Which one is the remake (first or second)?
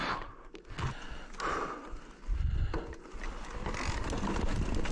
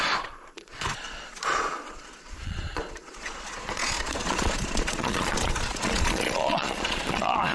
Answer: second